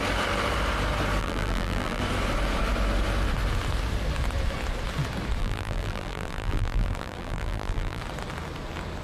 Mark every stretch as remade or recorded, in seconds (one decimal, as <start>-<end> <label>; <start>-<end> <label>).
0.0-1.2 recorded; 1.2-2.0 remade; 2.0-5.4 recorded; 5.4-8.0 remade; 8.0-9.0 recorded